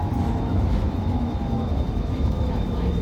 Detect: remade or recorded remade